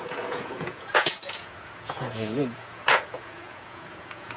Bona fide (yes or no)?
no